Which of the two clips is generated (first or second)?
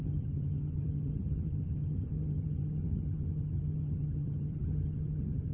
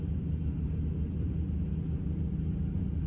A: first